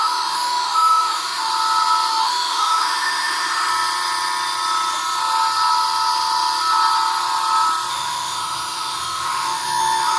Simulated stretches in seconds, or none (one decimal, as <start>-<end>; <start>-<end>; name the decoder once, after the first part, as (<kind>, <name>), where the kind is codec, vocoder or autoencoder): 0.0-1.5 (autoencoder, DAC-VAE); 2.1-3.7; 7.9-10.2